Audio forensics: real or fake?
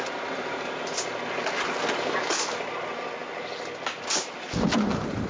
real